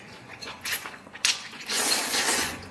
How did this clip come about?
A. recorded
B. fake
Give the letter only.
B